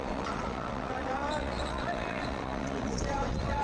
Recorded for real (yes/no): no